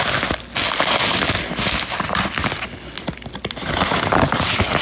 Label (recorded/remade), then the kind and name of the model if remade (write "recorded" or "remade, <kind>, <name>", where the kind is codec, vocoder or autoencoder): recorded